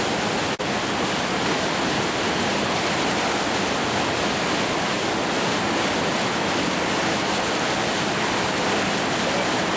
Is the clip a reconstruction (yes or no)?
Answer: no